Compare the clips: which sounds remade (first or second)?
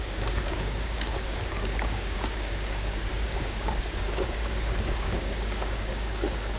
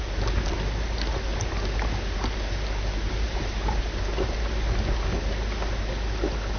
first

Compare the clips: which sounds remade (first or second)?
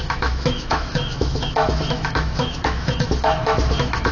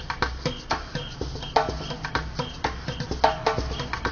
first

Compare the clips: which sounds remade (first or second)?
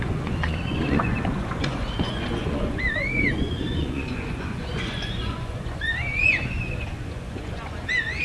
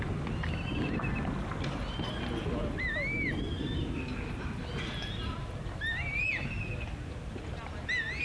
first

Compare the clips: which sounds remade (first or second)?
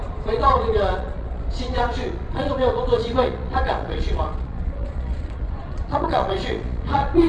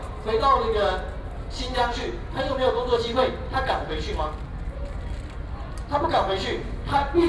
first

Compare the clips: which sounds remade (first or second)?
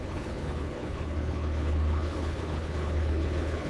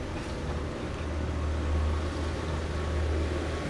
first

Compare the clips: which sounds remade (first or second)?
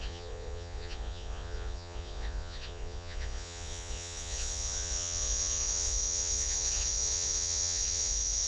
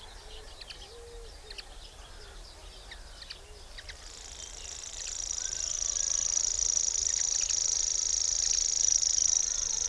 first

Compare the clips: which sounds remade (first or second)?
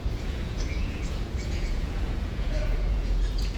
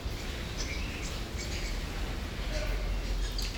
first